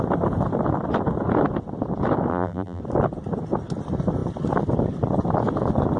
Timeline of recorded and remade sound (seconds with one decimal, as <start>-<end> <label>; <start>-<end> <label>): 0.0-2.3 recorded; 2.3-2.8 remade; 2.8-6.0 recorded